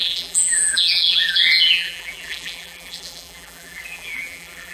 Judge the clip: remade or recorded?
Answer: remade